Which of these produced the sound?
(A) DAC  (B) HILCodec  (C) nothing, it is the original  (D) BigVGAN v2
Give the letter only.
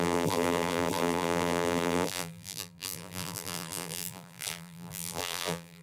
D